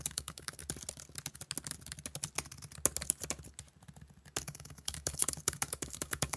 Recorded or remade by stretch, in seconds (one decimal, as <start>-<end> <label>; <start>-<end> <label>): 0.0-0.6 remade; 0.6-4.4 recorded; 4.4-6.4 remade